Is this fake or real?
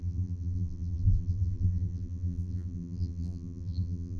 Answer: fake